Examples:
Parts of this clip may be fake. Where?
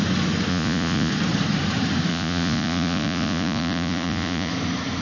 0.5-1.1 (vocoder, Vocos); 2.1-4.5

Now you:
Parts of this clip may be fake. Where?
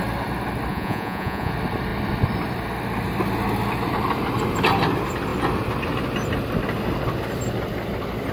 0.7-1.5 (vocoder, Vocos)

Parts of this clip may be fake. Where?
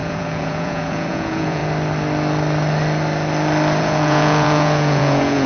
0.0-1.6 (vocoder, Vocos); 3.8-5.5